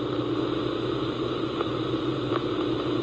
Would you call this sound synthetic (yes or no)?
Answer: no